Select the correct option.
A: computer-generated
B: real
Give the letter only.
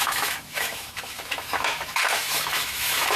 A